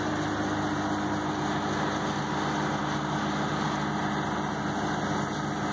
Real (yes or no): yes